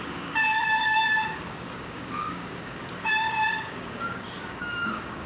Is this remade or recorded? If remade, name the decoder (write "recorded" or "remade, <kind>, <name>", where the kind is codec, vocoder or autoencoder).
remade, codec, DAC